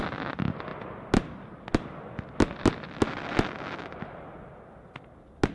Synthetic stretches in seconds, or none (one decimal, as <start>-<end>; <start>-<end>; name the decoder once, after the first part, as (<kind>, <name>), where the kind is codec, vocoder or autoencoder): none